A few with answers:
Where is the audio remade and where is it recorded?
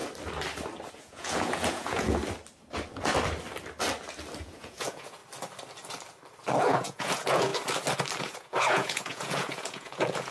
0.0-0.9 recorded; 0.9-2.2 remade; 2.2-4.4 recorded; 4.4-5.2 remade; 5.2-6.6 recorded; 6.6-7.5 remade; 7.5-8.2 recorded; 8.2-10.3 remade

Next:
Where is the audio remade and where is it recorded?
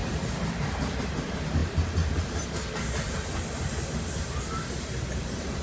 0.0-5.6 recorded